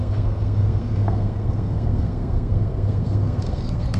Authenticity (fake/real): fake